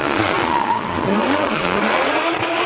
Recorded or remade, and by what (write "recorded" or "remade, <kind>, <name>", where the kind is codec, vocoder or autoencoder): remade, vocoder, Vocos